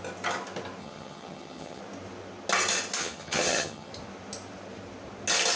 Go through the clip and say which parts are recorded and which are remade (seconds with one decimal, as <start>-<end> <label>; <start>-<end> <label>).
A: 0.0-0.8 recorded; 0.8-1.8 remade; 1.8-3.0 recorded; 3.0-3.9 remade; 3.9-5.6 recorded